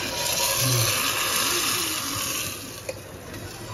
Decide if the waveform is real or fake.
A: real